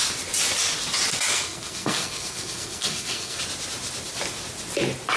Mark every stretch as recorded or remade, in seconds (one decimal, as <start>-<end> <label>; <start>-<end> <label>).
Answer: 0.0-1.3 recorded; 1.3-3.4 remade; 3.4-5.2 recorded